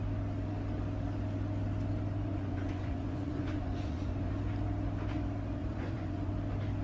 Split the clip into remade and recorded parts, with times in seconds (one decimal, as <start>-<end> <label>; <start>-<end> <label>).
0.0-2.3 recorded; 2.3-4.3 remade; 4.3-5.6 recorded; 5.6-6.3 remade; 6.3-6.8 recorded